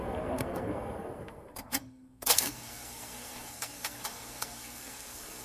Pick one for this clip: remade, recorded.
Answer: remade